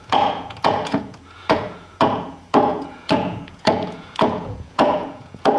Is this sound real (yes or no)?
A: no